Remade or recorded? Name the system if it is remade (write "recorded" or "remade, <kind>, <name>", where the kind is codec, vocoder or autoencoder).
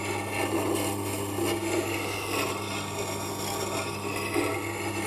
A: recorded